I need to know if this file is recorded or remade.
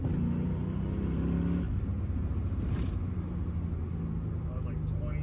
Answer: recorded